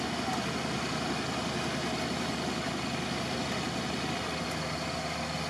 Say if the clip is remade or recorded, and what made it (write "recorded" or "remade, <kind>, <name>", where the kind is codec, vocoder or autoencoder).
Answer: recorded